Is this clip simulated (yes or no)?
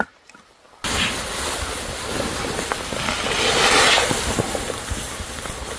no